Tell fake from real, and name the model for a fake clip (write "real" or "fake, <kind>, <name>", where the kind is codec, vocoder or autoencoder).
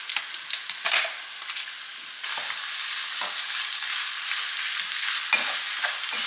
real